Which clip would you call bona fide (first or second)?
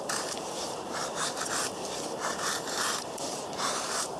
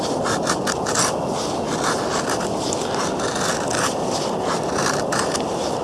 second